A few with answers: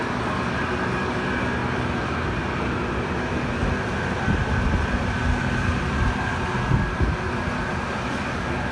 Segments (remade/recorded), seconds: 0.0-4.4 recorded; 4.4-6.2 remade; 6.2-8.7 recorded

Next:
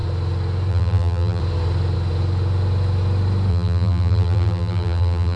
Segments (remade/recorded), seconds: 0.0-0.7 recorded; 0.7-1.4 remade; 1.4-3.5 recorded; 3.5-5.4 remade

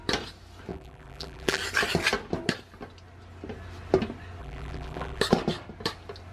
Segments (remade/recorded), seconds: 0.0-0.7 recorded; 0.7-1.6 remade; 1.6-4.4 recorded; 4.4-5.2 remade; 5.2-6.3 recorded

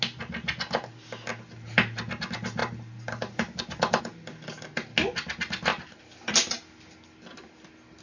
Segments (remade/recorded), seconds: 0.0-2.6 recorded; 2.6-4.0 remade; 4.0-5.7 recorded; 5.7-6.3 remade; 6.3-8.0 recorded

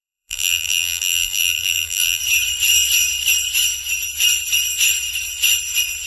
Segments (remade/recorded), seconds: 0.0-2.2 remade; 2.2-6.1 recorded

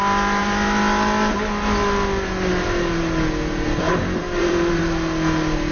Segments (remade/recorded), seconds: 0.0-4.2 recorded; 4.2-4.8 remade; 4.8-5.7 recorded

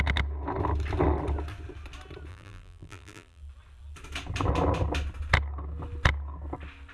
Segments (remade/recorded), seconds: 0.0-2.3 recorded; 2.3-3.4 remade; 3.4-6.9 recorded